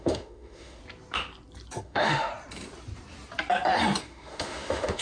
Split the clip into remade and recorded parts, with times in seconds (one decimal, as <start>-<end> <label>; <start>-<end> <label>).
0.0-0.8 remade; 0.8-1.8 recorded; 1.8-2.3 remade; 2.3-4.0 recorded; 4.0-5.0 remade